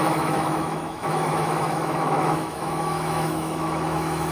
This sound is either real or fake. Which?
fake